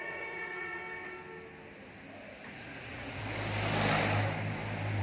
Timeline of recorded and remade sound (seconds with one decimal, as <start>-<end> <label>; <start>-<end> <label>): 0.0-0.8 remade; 0.8-2.5 recorded; 2.5-3.2 remade; 3.2-5.0 recorded